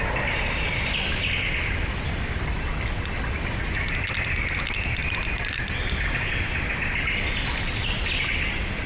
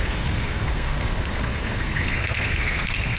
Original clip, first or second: first